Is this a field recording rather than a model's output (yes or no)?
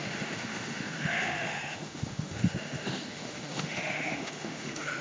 no